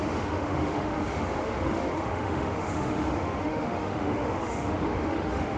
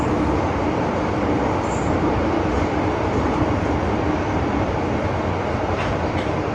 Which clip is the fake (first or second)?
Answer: first